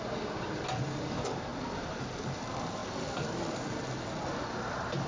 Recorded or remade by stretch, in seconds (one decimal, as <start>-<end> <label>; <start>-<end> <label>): 0.0-1.5 recorded; 1.5-2.2 remade; 2.2-2.8 recorded; 2.8-3.9 remade; 3.9-5.1 recorded

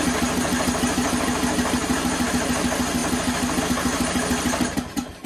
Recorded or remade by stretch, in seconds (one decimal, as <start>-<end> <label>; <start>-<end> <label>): 0.0-1.8 recorded; 1.8-2.3 remade; 2.3-5.3 recorded